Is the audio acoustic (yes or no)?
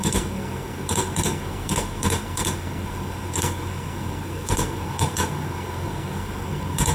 no